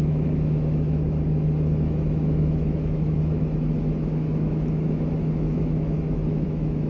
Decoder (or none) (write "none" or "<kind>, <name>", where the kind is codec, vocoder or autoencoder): autoencoder, DAC-VAE